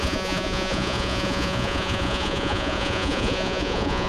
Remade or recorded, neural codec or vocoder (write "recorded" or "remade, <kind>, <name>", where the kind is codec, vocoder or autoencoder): remade, vocoder, Vocos